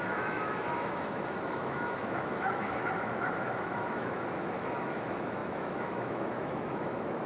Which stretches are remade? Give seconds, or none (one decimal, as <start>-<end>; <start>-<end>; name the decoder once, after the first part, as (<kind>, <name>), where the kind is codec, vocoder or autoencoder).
0.0-7.3 (autoencoder, DAC-VAE)